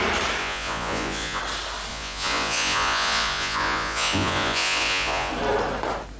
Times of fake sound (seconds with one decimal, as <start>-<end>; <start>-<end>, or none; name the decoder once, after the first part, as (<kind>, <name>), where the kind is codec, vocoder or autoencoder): 0.4-1.4 (vocoder, Vocos); 1.9-5.3